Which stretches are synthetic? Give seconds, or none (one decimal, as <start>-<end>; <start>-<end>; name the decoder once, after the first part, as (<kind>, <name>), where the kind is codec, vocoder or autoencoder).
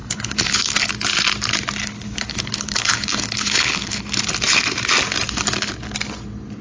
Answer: 0.0-0.9 (codec, HILCodec); 1.8-4.0